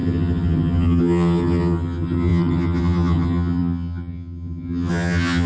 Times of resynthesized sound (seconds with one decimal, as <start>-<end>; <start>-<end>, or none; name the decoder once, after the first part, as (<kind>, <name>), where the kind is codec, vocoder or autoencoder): 0.0-5.5 (vocoder, HiFi-GAN)